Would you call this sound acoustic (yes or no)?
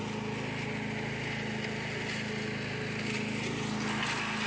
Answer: yes